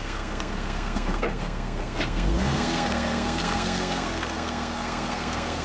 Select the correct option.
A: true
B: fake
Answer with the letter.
B